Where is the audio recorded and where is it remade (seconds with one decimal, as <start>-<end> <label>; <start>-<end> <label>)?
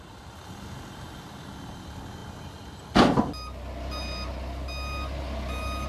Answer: 0.0-5.9 recorded